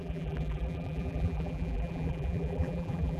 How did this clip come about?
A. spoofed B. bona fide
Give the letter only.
A